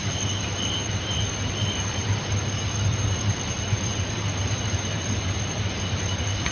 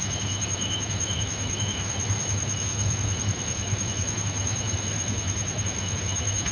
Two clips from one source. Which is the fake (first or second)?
second